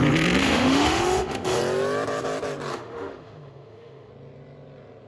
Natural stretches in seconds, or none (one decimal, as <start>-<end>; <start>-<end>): 0.0-0.4; 1.6-2.7; 4.1-5.1